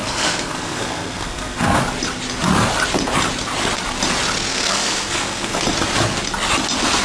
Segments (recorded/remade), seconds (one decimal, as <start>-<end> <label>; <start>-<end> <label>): 0.0-1.8 remade; 1.8-4.5 recorded; 4.5-5.6 remade; 5.6-7.0 recorded